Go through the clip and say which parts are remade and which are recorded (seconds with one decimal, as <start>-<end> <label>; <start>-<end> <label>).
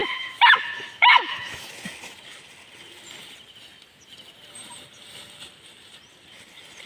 0.0-1.7 remade; 1.7-6.9 recorded